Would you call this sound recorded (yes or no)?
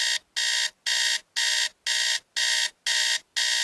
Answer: yes